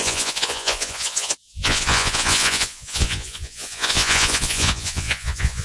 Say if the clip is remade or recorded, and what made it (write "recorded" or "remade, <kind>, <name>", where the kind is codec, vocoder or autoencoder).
remade, vocoder, Vocos